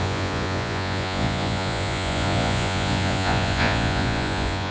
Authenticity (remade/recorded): remade